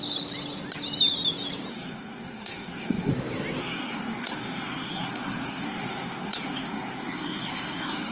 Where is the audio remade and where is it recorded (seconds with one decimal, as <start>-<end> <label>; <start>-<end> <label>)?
0.0-1.7 recorded; 1.7-3.1 remade; 3.1-3.6 recorded; 3.6-8.1 remade